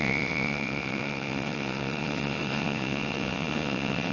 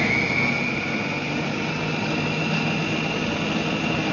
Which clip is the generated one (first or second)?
first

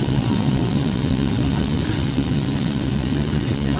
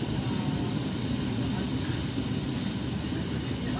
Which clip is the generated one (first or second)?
first